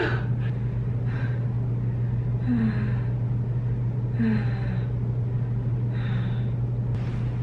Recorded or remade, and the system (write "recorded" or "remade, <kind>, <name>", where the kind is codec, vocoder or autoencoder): recorded